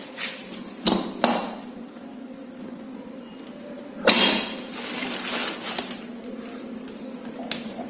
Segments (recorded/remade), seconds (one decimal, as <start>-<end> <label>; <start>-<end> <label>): 0.0-7.9 recorded